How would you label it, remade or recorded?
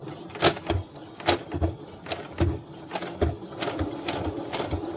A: recorded